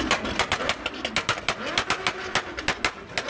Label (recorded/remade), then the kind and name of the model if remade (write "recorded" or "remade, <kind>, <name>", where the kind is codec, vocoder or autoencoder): recorded